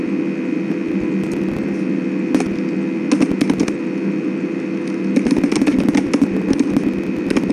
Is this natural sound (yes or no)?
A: yes